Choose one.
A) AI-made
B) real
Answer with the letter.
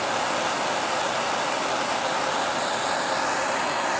B